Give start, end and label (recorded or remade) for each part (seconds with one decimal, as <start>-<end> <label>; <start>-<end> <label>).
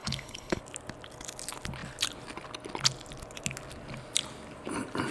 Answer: 0.0-0.6 remade; 0.6-5.1 recorded